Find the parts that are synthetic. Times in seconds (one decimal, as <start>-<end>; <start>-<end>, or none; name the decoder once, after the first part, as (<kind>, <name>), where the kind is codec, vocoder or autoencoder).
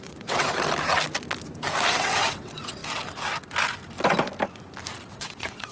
0.0-0.5 (vocoder, WaveNeXt); 2.0-2.8; 5.1-5.7